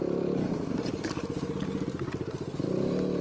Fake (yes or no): no